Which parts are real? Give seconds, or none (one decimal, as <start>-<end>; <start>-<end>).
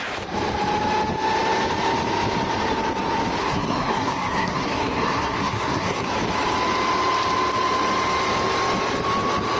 0.0-3.4; 6.1-9.6